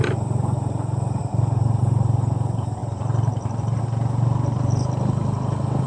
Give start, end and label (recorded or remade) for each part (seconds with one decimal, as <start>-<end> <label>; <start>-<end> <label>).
0.0-5.9 recorded